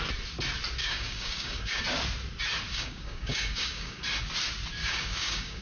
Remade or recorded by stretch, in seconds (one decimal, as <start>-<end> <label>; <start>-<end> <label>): 0.0-0.8 recorded; 0.8-1.8 remade; 1.8-2.7 recorded; 2.7-4.0 remade; 4.0-4.8 recorded; 4.8-5.6 remade